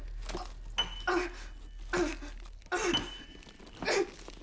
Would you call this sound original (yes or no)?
yes